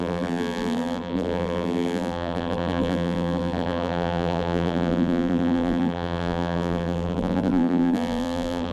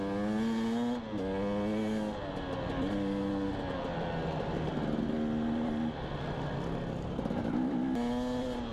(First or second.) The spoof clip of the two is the first